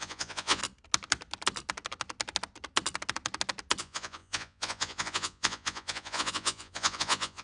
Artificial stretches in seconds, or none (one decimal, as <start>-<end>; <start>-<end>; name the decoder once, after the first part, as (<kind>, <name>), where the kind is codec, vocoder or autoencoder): 0.0-0.6 (vocoder, Vocos); 3.8-7.4